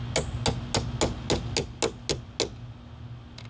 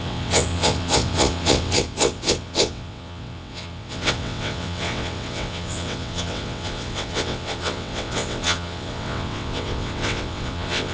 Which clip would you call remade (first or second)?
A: second